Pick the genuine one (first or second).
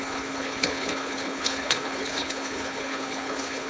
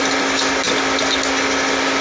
second